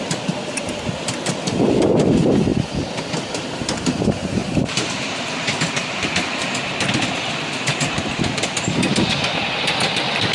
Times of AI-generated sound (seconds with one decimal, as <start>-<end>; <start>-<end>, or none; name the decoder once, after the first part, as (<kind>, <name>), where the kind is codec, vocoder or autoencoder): 4.4-5.0 (vocoder, BigVGAN v2); 5.8-10.3